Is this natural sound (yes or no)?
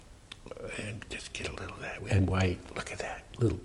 yes